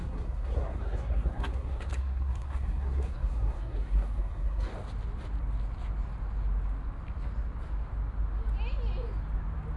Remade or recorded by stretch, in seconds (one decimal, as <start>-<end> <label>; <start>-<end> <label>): 0.0-4.7 remade; 4.7-9.8 recorded